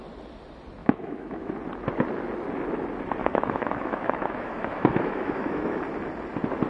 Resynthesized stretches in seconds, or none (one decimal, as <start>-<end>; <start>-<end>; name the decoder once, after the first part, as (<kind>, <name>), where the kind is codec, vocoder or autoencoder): 0.8-1.5 (autoencoder, DAC-VAE); 3.2-5.8